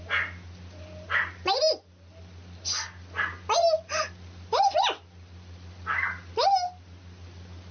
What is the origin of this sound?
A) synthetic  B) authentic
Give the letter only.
B